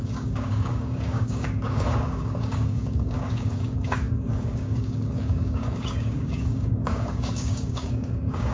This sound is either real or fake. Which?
fake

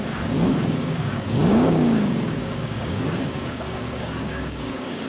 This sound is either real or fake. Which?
fake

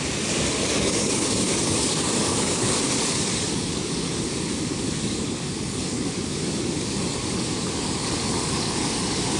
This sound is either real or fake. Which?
fake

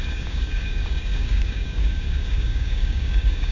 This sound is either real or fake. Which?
fake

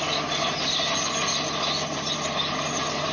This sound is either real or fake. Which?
real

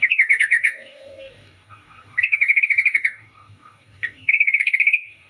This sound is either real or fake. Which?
fake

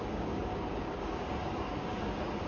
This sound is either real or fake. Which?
fake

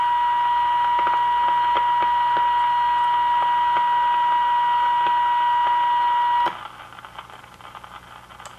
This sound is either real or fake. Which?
real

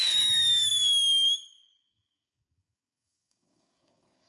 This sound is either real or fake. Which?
fake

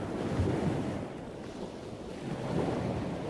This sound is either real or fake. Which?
real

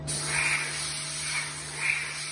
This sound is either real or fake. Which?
real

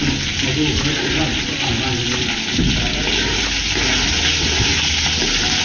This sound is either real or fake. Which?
real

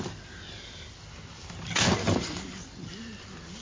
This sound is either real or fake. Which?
real